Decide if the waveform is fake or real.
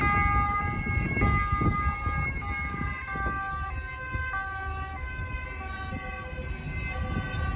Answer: real